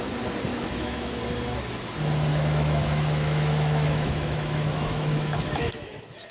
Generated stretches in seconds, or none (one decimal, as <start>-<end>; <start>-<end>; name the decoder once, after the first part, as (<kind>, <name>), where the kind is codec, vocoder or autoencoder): 0.5-1.2 (autoencoder, DAC-VAE); 2.3-6.3